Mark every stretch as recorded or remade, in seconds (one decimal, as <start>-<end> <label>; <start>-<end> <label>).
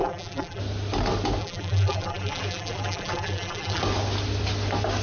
0.0-0.6 remade; 0.6-1.4 recorded; 1.4-3.8 remade; 3.8-5.0 recorded